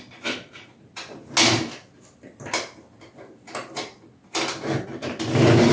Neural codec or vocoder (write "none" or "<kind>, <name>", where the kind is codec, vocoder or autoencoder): none